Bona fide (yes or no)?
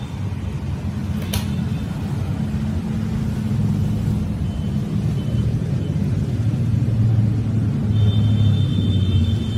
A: yes